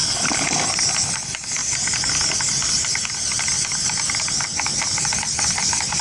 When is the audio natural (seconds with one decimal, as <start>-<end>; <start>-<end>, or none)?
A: 0.0-6.0